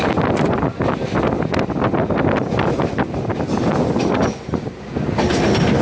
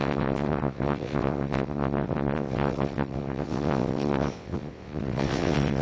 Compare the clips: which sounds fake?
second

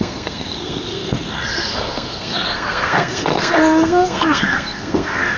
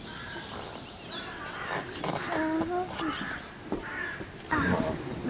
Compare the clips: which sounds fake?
first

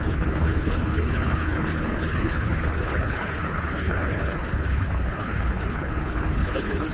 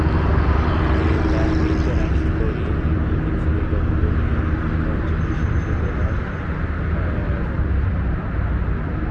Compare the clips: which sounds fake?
first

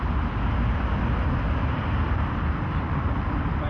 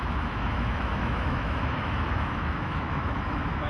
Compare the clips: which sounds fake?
second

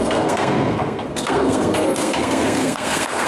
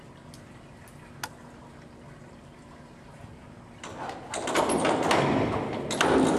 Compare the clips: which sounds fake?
first